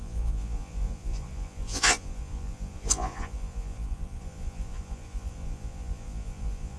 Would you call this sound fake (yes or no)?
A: yes